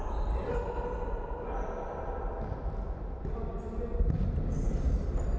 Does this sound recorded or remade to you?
recorded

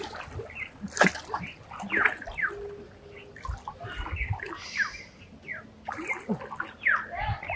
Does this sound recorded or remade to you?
recorded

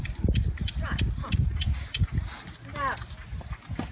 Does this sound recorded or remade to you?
recorded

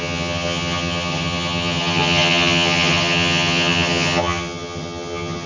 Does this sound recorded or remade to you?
remade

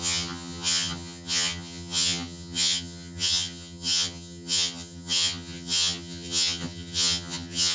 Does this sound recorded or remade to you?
remade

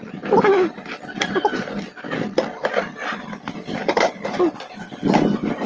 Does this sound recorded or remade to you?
recorded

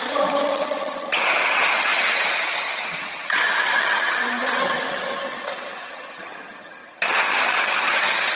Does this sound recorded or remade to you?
remade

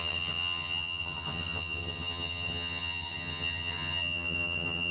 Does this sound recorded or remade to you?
remade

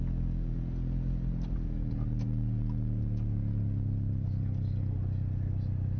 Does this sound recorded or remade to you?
recorded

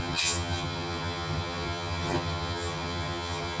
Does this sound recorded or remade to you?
remade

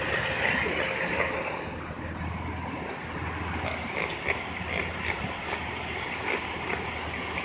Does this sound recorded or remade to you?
recorded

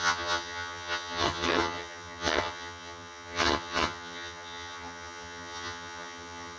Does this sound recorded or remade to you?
remade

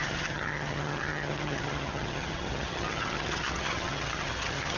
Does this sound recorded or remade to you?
remade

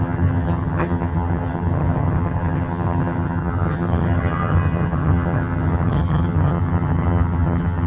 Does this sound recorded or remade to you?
remade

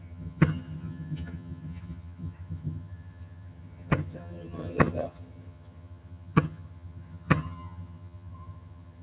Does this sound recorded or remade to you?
remade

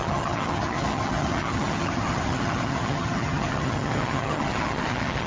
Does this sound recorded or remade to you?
remade